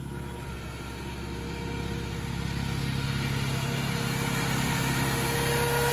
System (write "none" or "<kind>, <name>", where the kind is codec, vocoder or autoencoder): none